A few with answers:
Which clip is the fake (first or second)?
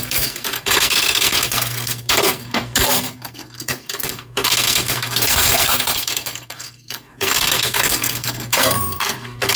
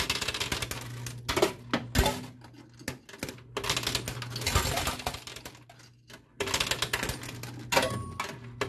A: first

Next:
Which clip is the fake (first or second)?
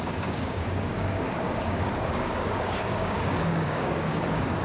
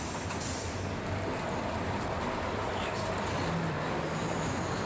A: first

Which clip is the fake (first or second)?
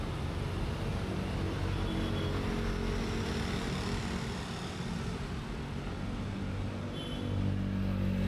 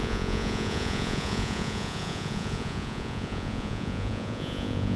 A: second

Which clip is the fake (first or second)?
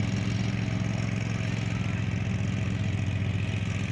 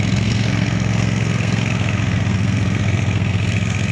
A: second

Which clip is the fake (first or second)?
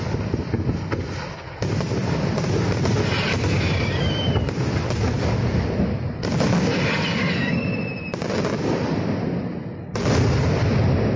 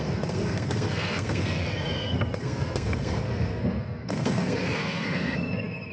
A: second